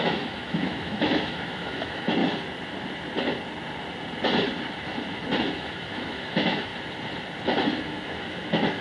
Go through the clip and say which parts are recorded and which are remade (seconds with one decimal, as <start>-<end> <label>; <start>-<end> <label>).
0.0-2.2 remade; 2.2-5.4 recorded; 5.4-6.7 remade; 6.7-7.8 recorded; 7.8-8.8 remade

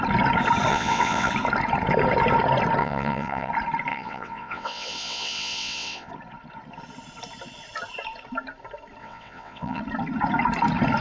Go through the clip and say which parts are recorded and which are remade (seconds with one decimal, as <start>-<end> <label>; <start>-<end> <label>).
0.0-0.7 recorded; 0.7-1.3 remade; 1.3-2.8 recorded; 2.8-3.5 remade; 3.5-3.9 recorded; 3.9-6.1 remade; 6.1-9.0 recorded; 9.0-9.8 remade; 9.8-11.0 recorded